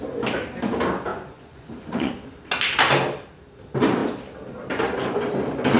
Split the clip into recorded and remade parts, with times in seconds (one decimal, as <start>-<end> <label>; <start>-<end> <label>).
0.0-1.1 recorded; 1.1-2.1 remade; 2.1-5.8 recorded